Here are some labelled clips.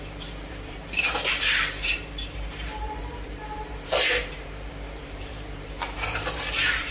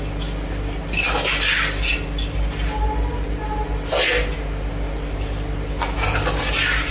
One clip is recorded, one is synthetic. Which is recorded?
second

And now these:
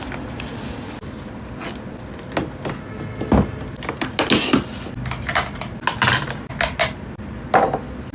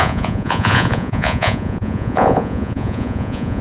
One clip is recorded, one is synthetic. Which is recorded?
first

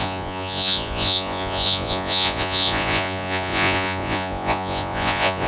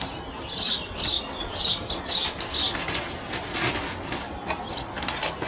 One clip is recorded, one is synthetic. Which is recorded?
second